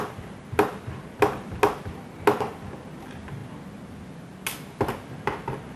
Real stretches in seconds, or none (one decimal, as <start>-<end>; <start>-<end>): 0.0-5.8